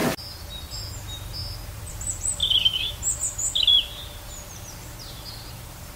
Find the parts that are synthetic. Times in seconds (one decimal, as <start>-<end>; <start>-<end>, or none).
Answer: 2.4-3.0